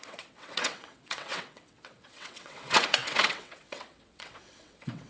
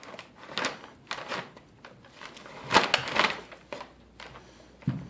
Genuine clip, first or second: second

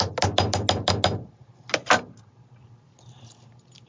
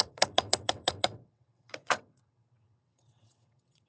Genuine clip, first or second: first